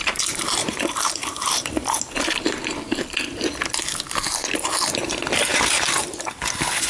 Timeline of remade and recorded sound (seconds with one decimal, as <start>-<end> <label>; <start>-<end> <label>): 0.0-0.6 recorded; 0.6-1.7 remade; 1.7-5.5 recorded; 5.5-6.3 remade; 6.3-6.9 recorded